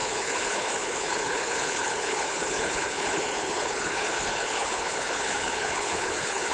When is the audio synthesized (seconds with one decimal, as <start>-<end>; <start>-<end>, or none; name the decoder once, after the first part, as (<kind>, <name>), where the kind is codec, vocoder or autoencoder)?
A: 0.0-6.5 (codec, HILCodec)